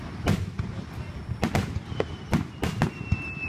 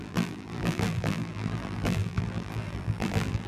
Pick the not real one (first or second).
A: second